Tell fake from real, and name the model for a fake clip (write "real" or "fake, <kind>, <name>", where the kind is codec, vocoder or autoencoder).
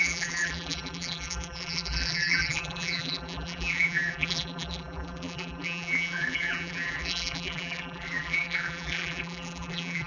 fake, vocoder, BigVGAN v2